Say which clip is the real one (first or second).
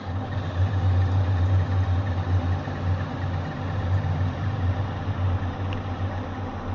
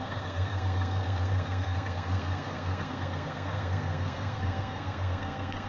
first